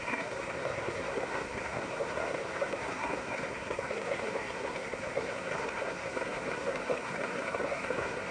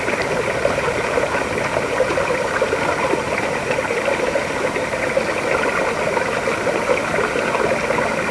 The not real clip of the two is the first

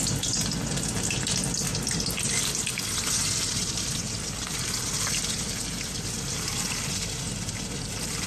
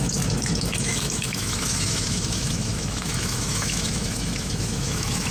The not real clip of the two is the second